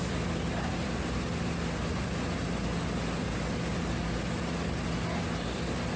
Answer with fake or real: real